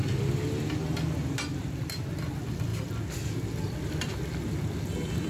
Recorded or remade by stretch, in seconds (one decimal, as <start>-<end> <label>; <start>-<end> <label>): 0.0-5.3 recorded